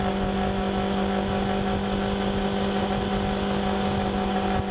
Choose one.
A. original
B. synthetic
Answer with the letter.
A